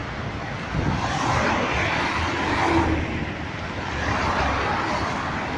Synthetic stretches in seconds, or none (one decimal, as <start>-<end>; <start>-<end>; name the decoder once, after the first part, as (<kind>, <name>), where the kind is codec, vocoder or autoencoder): none